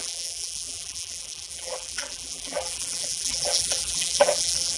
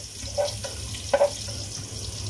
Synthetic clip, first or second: first